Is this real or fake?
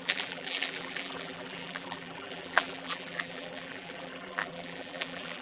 fake